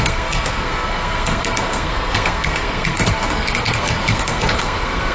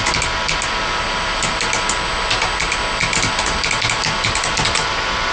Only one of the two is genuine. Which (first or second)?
second